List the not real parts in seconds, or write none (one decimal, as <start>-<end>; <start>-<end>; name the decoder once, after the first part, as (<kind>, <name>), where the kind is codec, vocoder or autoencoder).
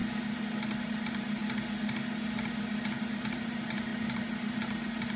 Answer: 0.8-1.4 (vocoder, BigVGAN v2); 3.0-5.2